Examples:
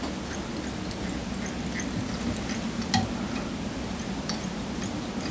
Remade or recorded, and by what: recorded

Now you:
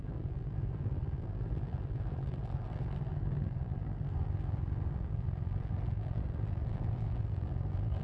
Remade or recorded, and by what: remade, vocoder, BigVGAN v2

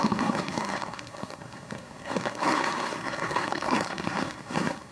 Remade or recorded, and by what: remade, codec, SNAC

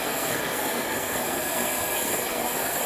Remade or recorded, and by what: remade, codec, SNAC